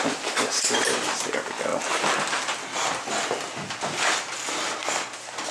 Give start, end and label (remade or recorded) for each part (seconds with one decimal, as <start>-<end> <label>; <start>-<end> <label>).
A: 0.0-5.5 recorded